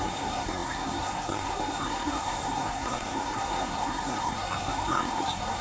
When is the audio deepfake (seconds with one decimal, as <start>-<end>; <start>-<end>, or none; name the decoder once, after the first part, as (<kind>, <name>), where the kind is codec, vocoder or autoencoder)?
0.0-5.6 (codec, SNAC)